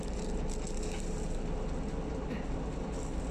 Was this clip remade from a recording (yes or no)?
no